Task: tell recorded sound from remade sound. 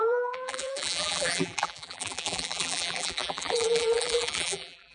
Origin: remade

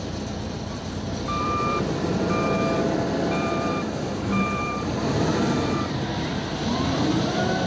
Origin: remade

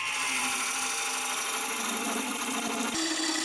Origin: recorded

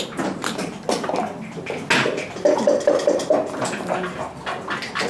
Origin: recorded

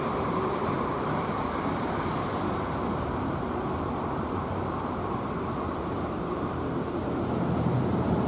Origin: remade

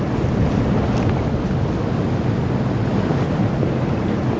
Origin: recorded